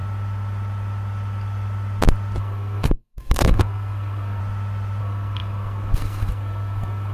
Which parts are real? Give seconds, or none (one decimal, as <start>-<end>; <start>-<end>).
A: 0.0-2.4; 4.4-5.0